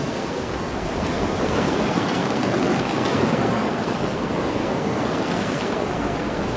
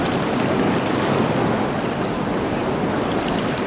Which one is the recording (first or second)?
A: second